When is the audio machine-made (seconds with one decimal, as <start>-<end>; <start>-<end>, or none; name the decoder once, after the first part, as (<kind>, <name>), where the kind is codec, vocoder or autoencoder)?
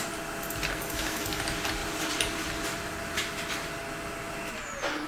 0.7-1.4 (codec, SNAC)